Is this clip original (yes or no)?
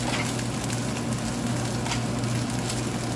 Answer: yes